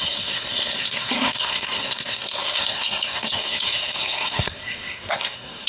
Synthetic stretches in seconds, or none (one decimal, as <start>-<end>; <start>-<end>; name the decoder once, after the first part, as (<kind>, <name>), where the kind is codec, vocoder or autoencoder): 0.0-5.7 (codec, SNAC)

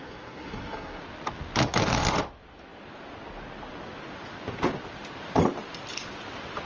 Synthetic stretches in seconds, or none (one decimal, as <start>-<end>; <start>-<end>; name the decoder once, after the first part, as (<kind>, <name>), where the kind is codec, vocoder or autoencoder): 0.0-1.0 (codec, SNAC)

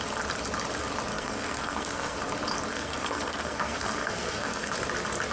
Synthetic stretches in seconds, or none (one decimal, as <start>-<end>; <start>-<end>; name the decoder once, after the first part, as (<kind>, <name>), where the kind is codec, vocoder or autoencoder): 1.1-2.2 (codec, SNAC); 2.7-4.7

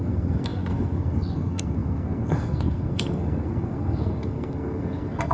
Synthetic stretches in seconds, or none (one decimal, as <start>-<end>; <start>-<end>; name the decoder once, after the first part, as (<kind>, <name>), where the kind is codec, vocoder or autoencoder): 0.0-5.3 (codec, SNAC)